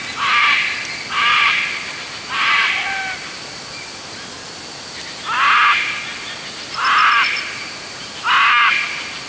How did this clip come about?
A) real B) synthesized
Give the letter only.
A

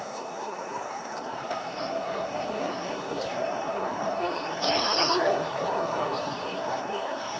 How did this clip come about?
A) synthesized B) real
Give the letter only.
A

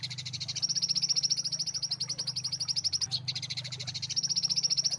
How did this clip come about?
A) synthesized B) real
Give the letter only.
B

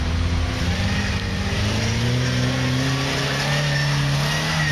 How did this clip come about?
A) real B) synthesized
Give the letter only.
A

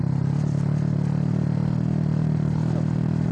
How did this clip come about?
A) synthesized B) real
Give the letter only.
B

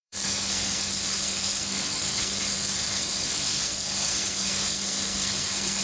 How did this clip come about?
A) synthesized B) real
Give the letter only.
A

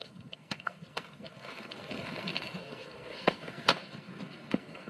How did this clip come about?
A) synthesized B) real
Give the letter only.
A